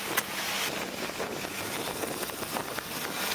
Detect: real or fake real